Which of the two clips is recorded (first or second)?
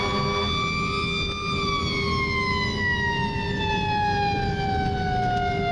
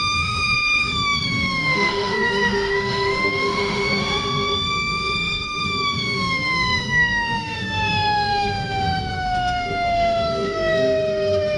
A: first